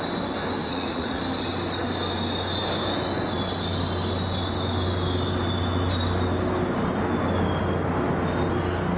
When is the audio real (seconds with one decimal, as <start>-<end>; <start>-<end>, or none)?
0.0-0.6; 1.2-9.0